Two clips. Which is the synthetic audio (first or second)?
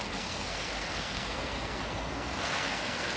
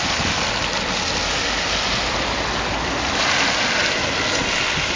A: first